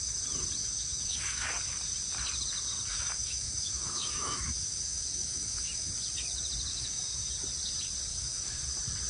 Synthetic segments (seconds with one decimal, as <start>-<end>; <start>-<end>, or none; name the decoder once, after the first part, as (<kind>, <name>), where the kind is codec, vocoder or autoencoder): 0.6-1.5 (autoencoder, DAC-VAE); 2.9-5.9; 6.7-7.3; 8.1-8.6